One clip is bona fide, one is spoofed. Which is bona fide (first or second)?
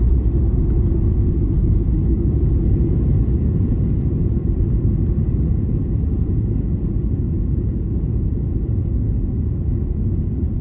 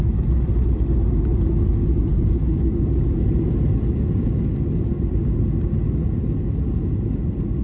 second